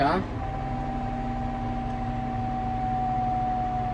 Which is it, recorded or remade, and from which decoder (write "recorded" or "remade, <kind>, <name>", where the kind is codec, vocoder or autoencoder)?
recorded